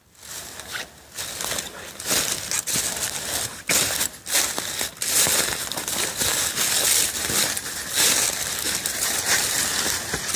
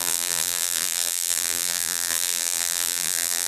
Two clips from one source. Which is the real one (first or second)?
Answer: first